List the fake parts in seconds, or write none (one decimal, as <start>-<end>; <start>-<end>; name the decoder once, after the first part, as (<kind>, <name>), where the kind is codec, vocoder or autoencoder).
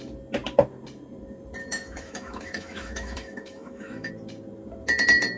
1.6-4.1 (autoencoder, DAC-VAE)